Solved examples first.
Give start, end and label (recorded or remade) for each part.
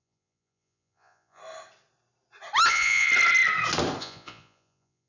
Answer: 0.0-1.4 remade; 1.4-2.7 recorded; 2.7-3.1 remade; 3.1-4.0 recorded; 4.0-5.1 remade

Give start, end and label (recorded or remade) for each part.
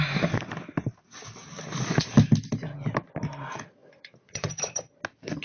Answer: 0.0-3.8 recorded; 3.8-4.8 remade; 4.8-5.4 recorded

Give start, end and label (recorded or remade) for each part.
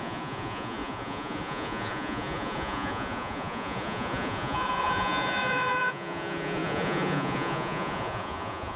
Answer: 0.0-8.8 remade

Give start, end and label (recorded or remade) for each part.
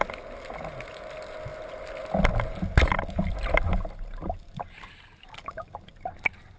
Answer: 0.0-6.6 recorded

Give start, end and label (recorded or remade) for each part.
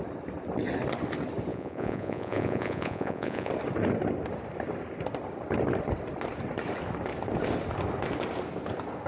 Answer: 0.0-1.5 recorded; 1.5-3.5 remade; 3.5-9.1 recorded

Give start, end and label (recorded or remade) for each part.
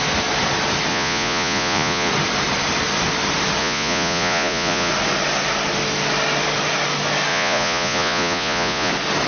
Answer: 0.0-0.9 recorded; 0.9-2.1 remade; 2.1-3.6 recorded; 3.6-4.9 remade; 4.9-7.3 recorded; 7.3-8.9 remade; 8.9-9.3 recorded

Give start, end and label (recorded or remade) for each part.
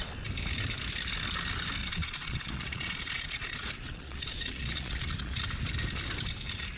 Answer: 0.0-1.8 recorded; 1.8-5.4 remade; 5.4-6.8 recorded